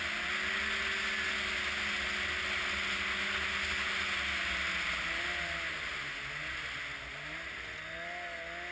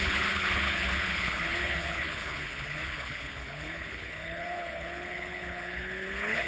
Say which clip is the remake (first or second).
second